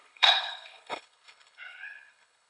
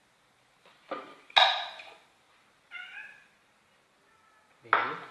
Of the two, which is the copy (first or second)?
first